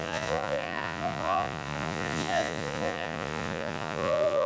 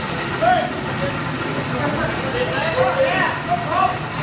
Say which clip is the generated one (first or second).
first